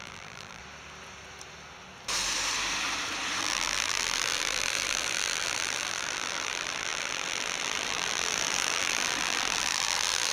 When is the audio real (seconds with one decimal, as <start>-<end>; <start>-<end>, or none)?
0.6-3.4